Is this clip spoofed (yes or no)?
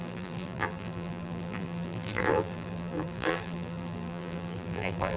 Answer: yes